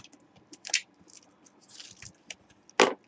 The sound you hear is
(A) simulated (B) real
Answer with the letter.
B